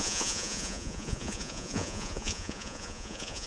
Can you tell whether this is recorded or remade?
remade